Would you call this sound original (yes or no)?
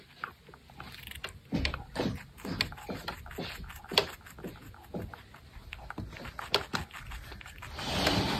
yes